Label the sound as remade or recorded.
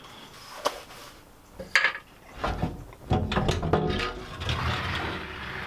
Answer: recorded